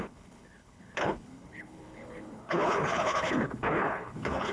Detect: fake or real fake